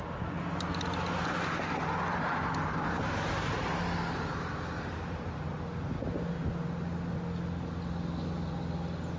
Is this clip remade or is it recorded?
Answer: recorded